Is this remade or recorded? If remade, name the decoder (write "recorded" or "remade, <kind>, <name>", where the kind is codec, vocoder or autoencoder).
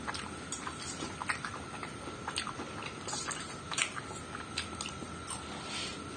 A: recorded